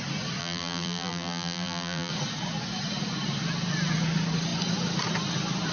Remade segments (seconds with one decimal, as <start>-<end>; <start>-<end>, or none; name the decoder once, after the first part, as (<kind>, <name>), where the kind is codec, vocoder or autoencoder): 0.4-2.1 (vocoder, BigVGAN v2)